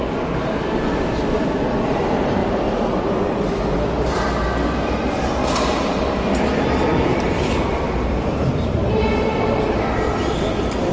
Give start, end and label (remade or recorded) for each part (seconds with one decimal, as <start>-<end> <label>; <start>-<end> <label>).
0.0-6.5 recorded; 6.5-8.8 remade; 8.8-9.3 recorded; 9.3-10.1 remade; 10.1-10.9 recorded

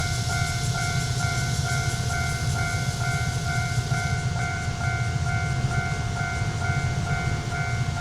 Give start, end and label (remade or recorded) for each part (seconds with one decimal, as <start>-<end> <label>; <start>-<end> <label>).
0.0-4.7 remade; 4.7-8.0 recorded

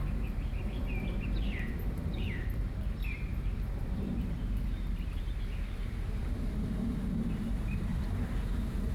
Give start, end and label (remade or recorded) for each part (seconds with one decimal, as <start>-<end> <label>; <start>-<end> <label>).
0.0-8.9 remade

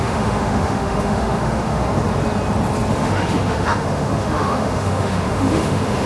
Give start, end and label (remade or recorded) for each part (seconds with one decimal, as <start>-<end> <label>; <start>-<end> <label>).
0.0-1.8 remade; 1.8-2.9 recorded; 2.9-6.1 remade

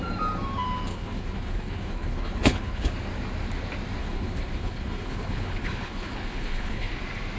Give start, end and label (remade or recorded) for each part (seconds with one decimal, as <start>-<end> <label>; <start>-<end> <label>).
0.0-0.9 recorded; 0.9-2.9 remade; 2.9-4.0 recorded; 4.0-6.9 remade; 6.9-7.4 recorded

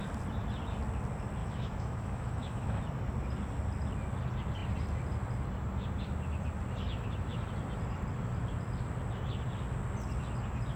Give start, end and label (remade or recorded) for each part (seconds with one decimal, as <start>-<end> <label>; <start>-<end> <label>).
0.0-1.4 recorded; 1.4-2.8 remade; 2.8-10.8 recorded

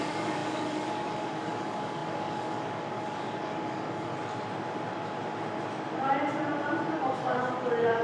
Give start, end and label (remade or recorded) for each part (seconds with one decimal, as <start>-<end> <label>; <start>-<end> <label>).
0.0-4.1 remade; 4.1-6.9 recorded; 6.9-8.0 remade

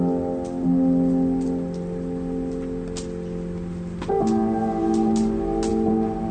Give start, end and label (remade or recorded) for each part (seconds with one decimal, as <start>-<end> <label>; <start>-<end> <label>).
0.0-6.3 recorded